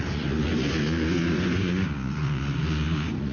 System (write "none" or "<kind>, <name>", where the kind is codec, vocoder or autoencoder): vocoder, Vocos